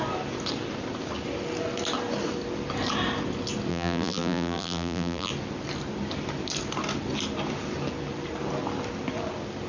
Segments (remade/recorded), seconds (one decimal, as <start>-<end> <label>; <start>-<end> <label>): 0.0-3.7 recorded; 3.7-5.3 remade; 5.3-9.7 recorded